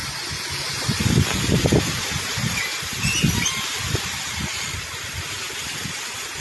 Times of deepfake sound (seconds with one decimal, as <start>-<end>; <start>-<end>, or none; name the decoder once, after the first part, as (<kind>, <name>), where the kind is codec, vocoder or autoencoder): none